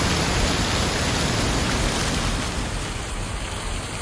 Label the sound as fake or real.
real